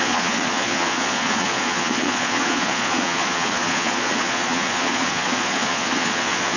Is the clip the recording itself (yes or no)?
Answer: no